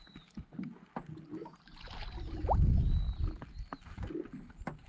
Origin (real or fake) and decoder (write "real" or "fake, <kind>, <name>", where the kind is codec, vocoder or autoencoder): real